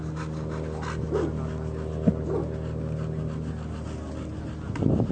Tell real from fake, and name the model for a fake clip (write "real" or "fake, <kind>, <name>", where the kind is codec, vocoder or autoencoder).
real